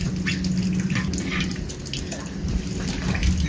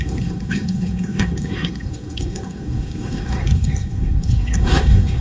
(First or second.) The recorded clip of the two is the first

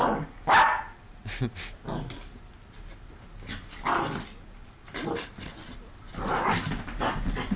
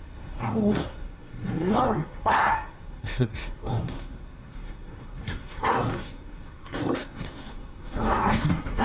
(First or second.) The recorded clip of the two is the first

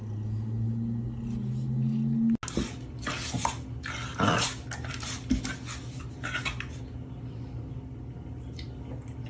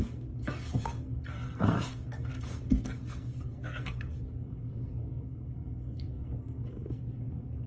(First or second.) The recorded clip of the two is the first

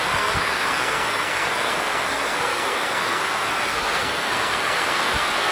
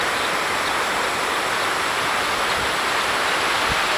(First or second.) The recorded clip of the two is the second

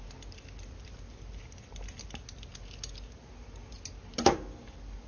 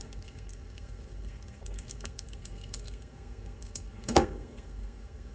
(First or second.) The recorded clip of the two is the first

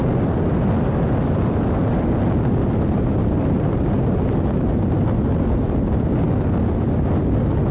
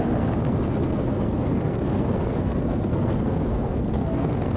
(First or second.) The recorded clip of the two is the first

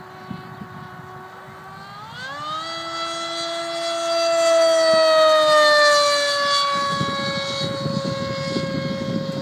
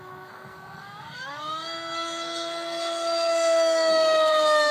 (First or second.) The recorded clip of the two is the first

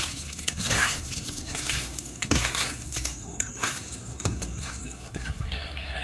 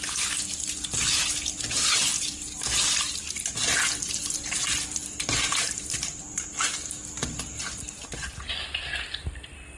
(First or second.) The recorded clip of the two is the second